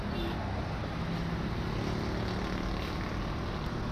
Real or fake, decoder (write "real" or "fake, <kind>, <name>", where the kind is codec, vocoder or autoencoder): real